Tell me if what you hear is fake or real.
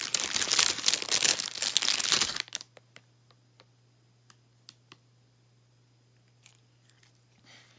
real